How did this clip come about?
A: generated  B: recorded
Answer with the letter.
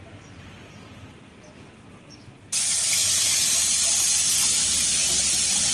B